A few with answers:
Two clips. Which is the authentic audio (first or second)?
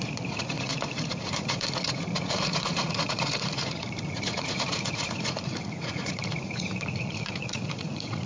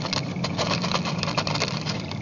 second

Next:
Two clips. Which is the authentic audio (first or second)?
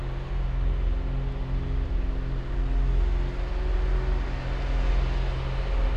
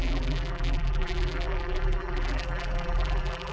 first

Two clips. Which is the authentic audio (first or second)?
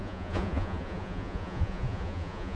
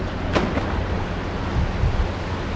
second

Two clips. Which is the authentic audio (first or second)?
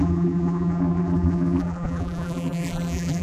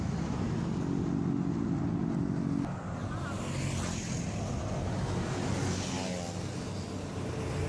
second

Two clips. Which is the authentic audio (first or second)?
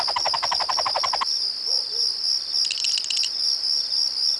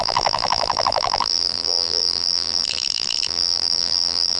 first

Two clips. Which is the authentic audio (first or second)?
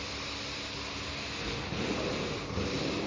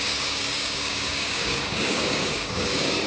first